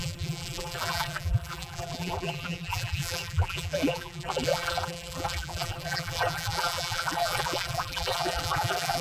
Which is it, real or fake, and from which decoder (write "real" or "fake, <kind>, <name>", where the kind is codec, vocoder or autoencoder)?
fake, vocoder, BigVGAN v2